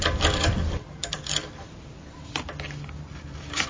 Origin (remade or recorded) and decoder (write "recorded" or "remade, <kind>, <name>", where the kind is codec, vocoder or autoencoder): recorded